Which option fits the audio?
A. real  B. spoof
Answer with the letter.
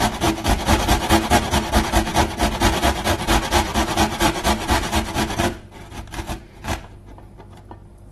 A